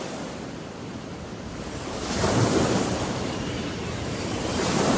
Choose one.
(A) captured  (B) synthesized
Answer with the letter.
B